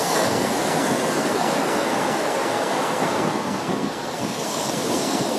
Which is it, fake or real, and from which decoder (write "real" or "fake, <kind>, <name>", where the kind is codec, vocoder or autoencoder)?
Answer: fake, codec, SNAC